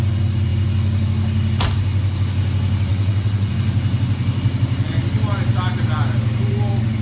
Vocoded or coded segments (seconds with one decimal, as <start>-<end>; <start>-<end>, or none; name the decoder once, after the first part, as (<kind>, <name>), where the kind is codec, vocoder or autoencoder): 2.9-3.5 (vocoder, WaveNeXt)